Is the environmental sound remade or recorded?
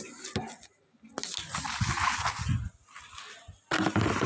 recorded